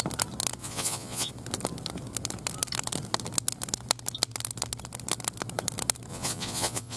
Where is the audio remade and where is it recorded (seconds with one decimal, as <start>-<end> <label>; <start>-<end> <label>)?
0.0-0.6 recorded; 0.6-1.3 remade; 1.3-6.1 recorded; 6.1-7.0 remade